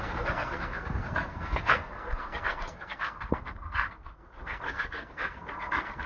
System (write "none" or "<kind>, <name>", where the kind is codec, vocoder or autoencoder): codec, SNAC